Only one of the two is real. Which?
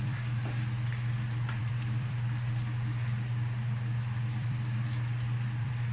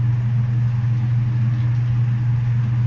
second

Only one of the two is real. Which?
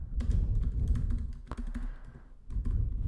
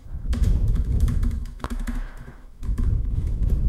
first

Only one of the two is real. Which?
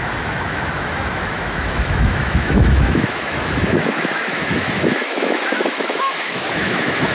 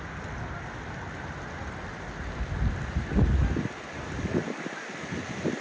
second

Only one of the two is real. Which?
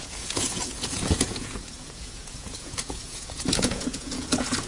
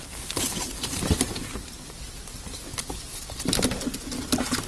second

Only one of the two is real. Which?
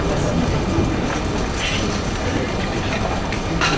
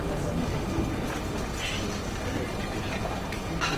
second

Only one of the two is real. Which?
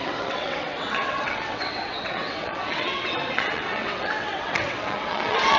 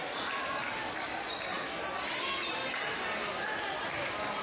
second